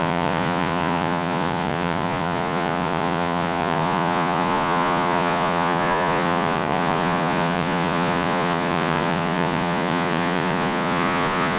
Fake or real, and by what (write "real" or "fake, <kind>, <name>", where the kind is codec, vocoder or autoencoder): fake, vocoder, Vocos